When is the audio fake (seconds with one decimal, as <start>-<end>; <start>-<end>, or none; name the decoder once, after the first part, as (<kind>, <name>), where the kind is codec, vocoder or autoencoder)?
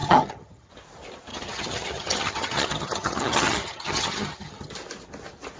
0.0-0.7 (vocoder, HiFi-GAN); 1.3-4.7